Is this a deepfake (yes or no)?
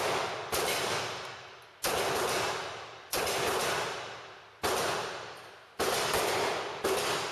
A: no